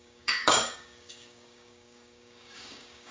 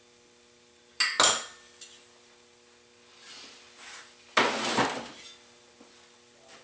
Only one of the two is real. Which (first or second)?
second